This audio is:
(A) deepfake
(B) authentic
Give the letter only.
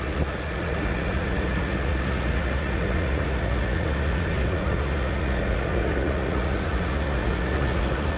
A